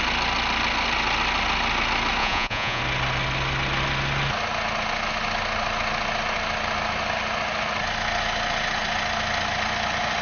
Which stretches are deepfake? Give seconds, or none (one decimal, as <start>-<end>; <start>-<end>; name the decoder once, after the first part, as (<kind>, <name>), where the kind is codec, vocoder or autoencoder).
2.2-2.8 (vocoder, Vocos)